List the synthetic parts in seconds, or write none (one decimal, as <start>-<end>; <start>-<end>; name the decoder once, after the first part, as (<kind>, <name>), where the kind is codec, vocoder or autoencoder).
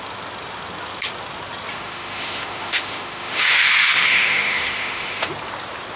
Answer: 1.7-5.3 (autoencoder, DAC-VAE)